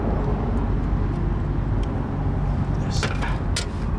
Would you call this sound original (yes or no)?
yes